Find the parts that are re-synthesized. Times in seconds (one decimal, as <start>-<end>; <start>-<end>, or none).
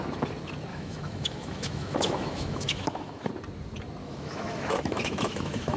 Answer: 0.7-3.3; 4.0-5.8